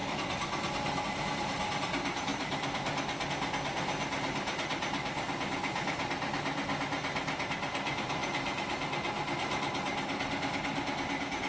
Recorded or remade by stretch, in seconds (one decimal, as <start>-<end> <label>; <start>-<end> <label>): 0.0-11.5 recorded